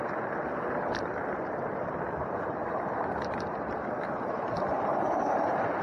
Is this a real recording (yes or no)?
no